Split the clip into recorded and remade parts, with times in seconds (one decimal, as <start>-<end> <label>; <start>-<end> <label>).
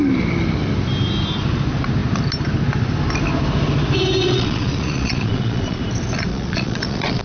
0.0-4.2 recorded; 4.2-5.8 remade; 5.8-6.3 recorded; 6.3-7.2 remade